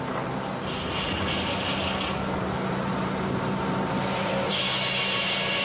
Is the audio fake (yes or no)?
no